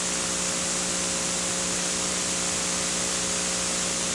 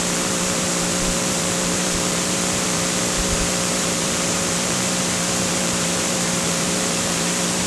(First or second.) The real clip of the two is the first